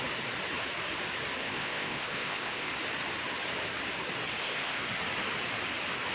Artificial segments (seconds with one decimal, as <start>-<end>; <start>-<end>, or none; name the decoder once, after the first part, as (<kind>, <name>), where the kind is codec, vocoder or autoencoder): 1.4-2.7 (codec, ZipCodec); 4.4-5.0